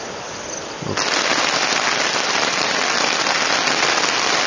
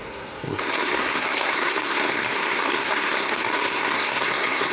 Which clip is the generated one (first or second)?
second